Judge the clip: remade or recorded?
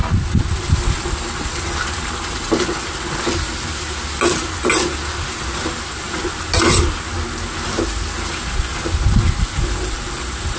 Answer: recorded